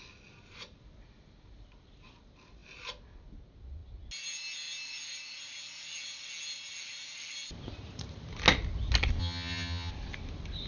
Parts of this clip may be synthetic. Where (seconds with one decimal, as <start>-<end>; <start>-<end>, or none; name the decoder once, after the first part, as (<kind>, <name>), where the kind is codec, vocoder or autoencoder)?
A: 9.2-9.9 (vocoder, HiFi-GAN)